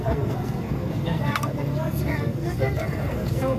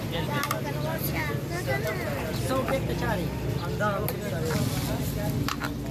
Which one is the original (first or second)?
second